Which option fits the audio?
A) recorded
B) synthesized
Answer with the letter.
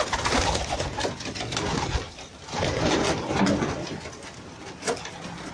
A